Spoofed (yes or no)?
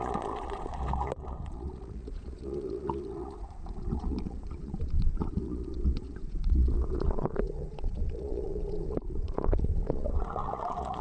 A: yes